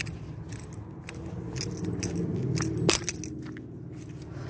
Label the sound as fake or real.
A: real